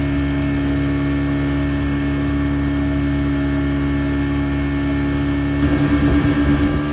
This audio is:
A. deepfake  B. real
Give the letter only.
B